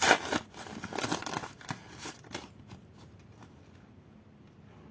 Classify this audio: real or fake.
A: real